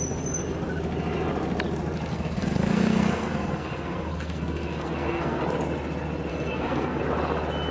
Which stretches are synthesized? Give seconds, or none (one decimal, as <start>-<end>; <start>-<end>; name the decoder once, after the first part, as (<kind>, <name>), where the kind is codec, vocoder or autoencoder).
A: 2.1-5.4 (codec, SNAC); 6.3-7.0